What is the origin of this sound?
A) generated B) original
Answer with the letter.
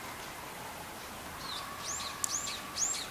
B